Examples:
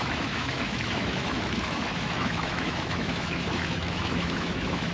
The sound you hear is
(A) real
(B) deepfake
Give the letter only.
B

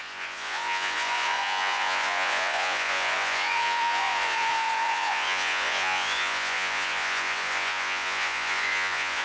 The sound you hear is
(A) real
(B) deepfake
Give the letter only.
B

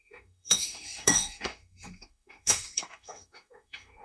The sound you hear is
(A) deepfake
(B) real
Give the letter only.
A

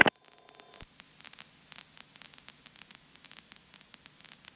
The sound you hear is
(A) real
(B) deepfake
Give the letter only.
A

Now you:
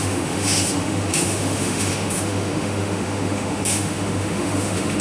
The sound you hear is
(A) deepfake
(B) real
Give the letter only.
A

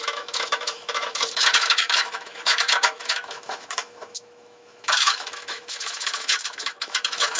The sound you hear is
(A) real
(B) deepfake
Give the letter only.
B